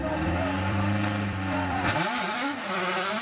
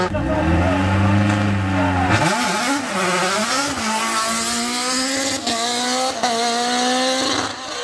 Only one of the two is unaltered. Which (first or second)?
second